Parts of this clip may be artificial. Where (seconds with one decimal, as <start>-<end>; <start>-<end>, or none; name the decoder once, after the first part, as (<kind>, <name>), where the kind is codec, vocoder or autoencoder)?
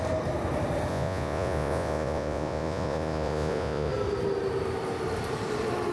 0.9-3.9 (vocoder, Vocos)